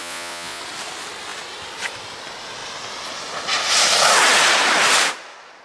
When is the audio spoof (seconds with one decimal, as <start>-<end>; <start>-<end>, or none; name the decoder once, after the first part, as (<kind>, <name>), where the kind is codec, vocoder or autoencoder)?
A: 0.0-0.6 (vocoder, Vocos)